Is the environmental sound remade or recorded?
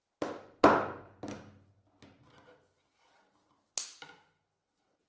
recorded